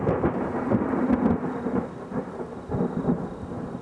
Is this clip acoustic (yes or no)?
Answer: yes